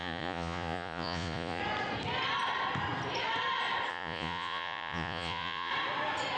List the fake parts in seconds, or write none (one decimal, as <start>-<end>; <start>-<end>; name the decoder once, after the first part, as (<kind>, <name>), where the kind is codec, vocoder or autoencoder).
0.0-1.6 (vocoder, Vocos); 3.9-5.7